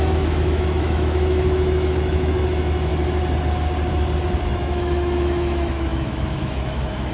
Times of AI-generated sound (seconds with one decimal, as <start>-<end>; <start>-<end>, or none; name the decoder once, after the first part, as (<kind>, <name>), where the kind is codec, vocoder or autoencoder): 0.0-2.9 (autoencoder, DAC-VAE); 4.4-7.1